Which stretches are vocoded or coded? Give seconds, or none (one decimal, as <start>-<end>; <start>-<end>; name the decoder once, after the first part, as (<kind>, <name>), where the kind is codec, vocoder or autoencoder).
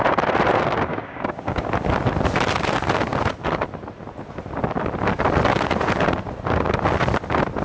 0.9-1.7 (codec, DAC)